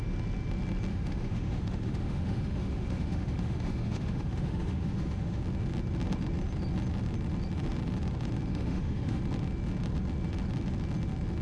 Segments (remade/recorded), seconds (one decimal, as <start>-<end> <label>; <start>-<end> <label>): 0.0-0.9 recorded; 0.9-5.4 remade; 5.4-8.5 recorded; 8.5-9.2 remade; 9.2-11.4 recorded